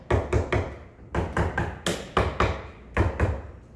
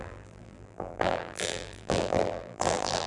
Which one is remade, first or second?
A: second